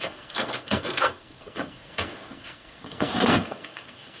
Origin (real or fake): fake